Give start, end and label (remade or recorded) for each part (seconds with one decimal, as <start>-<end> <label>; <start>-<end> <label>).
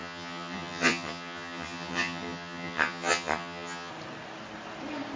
0.0-3.9 remade; 3.9-5.2 recorded